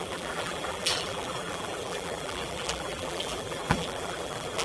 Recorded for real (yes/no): no